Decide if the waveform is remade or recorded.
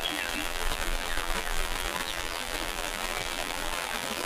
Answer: remade